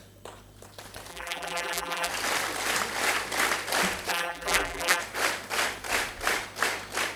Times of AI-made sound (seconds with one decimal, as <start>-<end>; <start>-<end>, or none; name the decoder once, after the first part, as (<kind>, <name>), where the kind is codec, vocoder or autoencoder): 1.1-2.1 (vocoder, BigVGAN v2); 4.1-5.0